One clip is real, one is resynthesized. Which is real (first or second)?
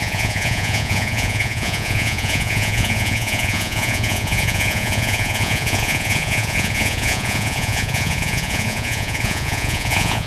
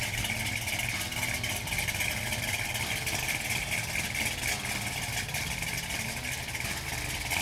second